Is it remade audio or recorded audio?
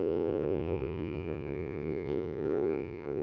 remade